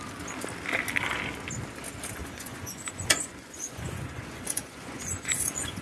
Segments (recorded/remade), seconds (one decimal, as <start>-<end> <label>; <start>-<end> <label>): 0.0-2.2 recorded; 2.2-5.8 remade